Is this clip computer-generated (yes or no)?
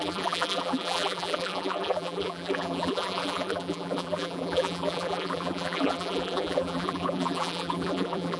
yes